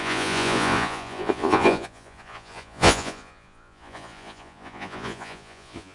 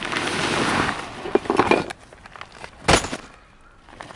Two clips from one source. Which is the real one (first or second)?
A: second